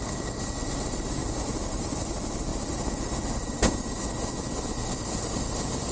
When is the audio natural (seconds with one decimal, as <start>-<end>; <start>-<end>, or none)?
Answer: 0.0-5.9